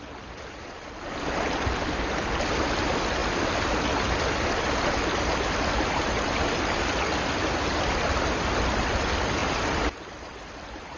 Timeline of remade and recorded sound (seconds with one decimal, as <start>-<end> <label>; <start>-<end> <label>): 0.0-11.0 recorded